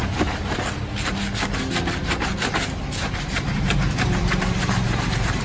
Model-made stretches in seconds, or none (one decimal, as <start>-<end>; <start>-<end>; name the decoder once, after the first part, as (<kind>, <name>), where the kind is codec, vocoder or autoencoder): 0.0-0.6 (vocoder, BigVGAN v2); 2.0-5.4